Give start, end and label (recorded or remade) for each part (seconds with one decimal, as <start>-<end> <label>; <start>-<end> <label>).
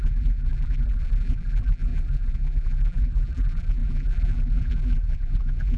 0.0-5.8 remade